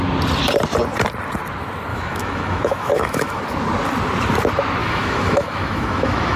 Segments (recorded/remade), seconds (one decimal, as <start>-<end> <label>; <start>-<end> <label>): 0.0-1.9 recorded; 1.9-3.4 remade; 3.4-4.8 recorded; 4.8-6.4 remade